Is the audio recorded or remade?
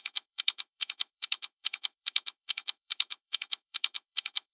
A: remade